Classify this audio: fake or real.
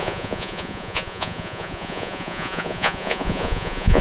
fake